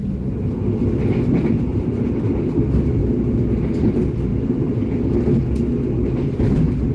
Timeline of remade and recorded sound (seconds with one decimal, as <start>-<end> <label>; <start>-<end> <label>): 0.0-6.9 recorded